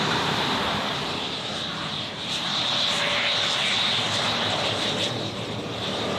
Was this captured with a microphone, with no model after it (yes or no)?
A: no